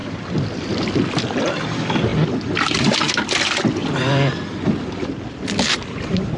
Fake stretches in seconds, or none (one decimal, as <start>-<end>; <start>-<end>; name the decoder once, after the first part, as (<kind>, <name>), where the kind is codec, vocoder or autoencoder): 0.0-1.5 (vocoder, BigVGAN v2); 2.1-3.1; 3.8-5.3